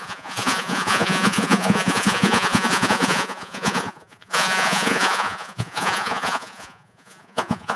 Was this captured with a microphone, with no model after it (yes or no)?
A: no